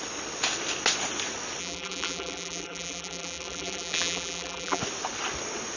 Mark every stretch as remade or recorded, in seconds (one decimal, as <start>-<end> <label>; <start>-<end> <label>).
0.0-1.6 recorded; 1.6-4.8 remade; 4.8-5.8 recorded